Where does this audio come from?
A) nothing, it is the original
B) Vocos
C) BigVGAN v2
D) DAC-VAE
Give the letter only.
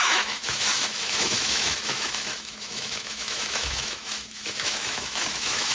D